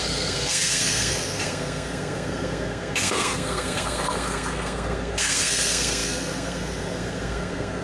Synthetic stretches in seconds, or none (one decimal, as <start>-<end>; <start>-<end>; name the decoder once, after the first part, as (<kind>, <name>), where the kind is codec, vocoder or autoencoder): 0.0-7.8 (codec, SNAC)